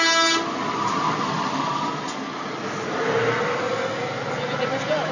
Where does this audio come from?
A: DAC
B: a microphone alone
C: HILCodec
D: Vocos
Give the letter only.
B